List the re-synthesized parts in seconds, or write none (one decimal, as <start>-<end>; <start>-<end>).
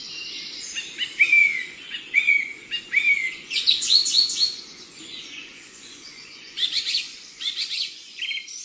1.4-2.7; 3.2-8.2